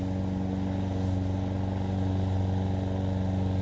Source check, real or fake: real